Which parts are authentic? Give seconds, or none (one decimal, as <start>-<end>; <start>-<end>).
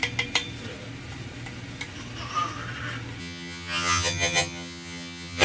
0.0-3.2